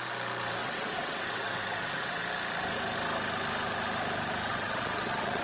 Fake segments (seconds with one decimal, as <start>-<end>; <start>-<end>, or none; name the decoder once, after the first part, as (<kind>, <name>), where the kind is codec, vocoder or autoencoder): 0.6-2.2 (vocoder, WaveNeXt); 4.5-5.4